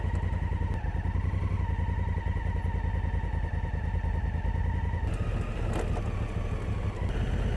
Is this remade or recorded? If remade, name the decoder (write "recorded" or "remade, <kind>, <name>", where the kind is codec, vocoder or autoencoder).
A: recorded